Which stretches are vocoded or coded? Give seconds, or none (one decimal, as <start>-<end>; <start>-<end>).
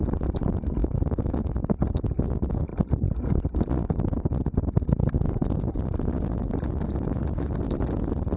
0.8-1.4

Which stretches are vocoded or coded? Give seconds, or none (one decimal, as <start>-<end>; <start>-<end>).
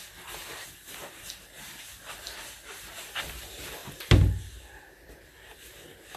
0.4-2.9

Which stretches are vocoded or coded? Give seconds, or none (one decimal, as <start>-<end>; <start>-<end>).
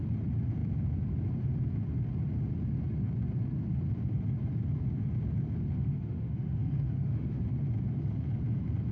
5.8-7.4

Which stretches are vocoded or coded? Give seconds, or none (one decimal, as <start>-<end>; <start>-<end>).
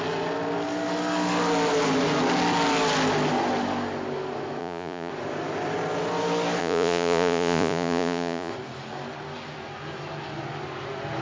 4.6-5.1; 6.6-8.5